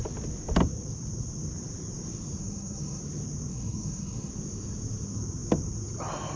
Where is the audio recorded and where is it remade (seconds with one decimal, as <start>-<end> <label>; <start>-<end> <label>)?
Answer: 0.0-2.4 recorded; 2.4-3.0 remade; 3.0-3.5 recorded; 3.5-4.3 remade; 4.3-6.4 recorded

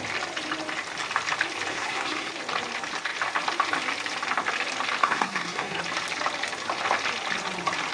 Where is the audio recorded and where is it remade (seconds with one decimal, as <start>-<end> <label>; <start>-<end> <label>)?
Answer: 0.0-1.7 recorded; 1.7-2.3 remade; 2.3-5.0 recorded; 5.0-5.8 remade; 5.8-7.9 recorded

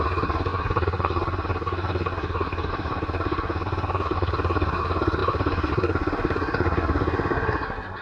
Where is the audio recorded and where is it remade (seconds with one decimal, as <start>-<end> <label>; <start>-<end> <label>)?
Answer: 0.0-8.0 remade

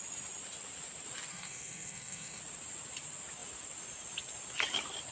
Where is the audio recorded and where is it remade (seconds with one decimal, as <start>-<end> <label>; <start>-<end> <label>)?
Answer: 0.0-1.3 recorded; 1.3-2.4 remade; 2.4-5.1 recorded